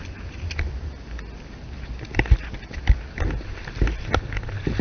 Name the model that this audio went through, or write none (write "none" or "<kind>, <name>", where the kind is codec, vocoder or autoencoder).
none